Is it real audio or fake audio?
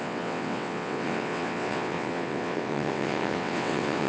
fake